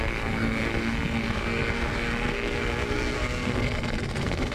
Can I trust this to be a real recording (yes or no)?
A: no